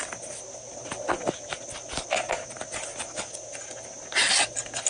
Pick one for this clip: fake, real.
real